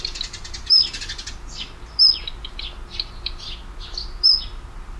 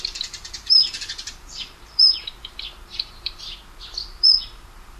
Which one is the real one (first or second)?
first